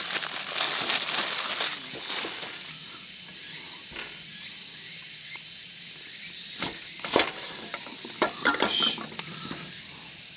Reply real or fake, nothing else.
real